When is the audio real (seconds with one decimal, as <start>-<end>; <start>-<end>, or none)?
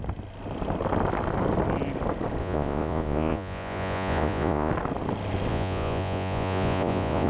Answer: 0.0-2.4; 4.7-5.5